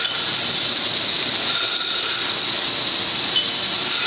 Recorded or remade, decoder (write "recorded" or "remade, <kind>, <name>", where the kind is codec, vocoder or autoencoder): recorded